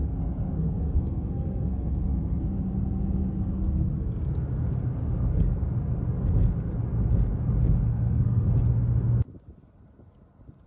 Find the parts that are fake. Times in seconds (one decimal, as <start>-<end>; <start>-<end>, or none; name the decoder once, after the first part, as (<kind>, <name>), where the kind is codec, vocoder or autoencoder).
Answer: 0.0-2.4 (codec, SNAC); 7.9-8.5